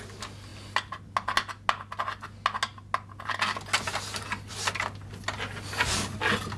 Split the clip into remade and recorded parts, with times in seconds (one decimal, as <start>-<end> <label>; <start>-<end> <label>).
0.0-6.6 recorded